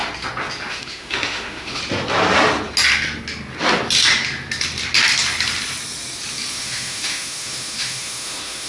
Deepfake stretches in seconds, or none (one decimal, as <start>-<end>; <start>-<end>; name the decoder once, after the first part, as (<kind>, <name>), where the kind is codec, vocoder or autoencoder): 0.7-1.8 (autoencoder, DAC-VAE); 6.5-8.7